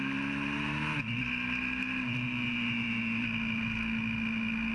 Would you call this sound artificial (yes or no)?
no